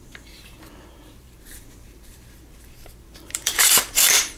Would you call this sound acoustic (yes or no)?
no